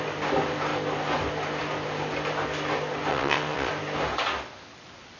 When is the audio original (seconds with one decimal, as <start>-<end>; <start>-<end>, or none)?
0.0-3.1; 3.7-5.2